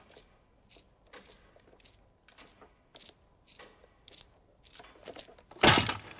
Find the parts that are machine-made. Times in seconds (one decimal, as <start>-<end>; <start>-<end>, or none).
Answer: none